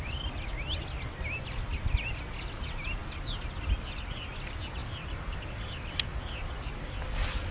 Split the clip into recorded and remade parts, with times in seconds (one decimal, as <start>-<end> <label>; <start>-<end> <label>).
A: 0.0-7.5 recorded